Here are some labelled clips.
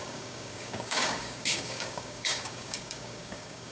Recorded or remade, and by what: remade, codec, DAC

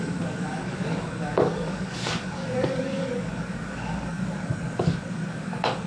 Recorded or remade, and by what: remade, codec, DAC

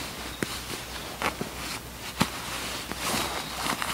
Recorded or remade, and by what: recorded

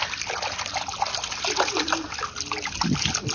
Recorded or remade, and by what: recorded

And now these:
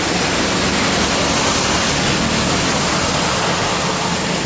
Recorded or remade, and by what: recorded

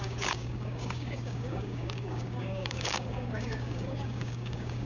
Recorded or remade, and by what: remade, codec, DAC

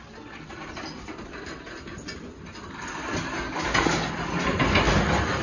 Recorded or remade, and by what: recorded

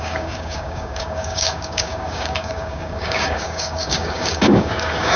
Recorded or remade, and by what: remade, codec, DAC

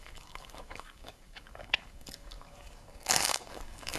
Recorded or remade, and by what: remade, codec, DAC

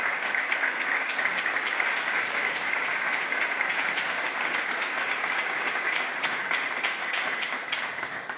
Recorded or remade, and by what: remade, codec, DAC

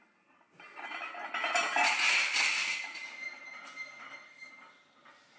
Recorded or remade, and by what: recorded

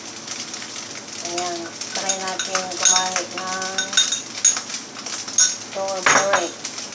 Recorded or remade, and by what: recorded